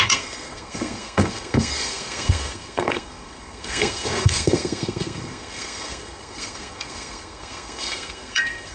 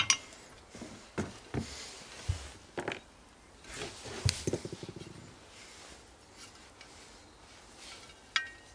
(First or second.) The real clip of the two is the second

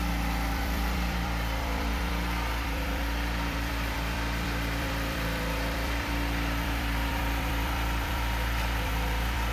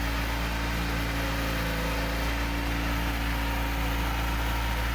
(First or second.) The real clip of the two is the second